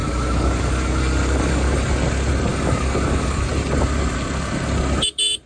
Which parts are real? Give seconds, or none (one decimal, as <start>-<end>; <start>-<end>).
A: 1.9-2.5; 3.5-5.5